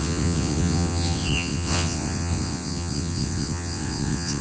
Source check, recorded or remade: remade